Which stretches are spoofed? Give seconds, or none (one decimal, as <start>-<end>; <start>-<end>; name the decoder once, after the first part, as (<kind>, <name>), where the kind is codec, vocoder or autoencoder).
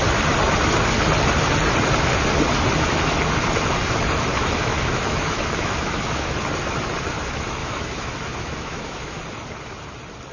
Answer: 4.3-6.2 (autoencoder, DAC-VAE); 7.6-9.2